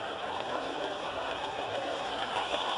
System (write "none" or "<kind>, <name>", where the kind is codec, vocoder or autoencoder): codec, SNAC